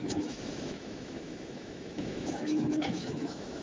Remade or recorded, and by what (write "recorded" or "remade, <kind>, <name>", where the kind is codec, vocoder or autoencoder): remade, autoencoder, DAC-VAE